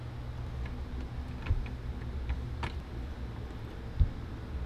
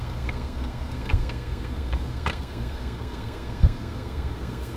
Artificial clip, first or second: second